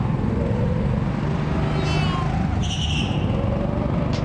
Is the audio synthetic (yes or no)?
no